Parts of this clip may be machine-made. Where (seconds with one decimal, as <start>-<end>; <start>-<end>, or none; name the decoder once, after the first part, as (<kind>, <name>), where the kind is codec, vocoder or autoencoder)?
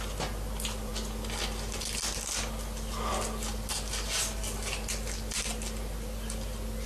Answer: none